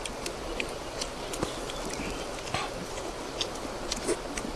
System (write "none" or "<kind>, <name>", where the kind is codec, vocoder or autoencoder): none